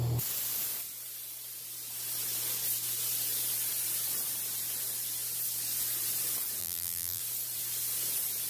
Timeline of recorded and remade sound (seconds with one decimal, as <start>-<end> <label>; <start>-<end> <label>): 0.0-6.6 recorded; 6.6-7.2 remade; 7.2-8.5 recorded